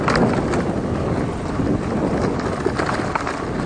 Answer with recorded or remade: recorded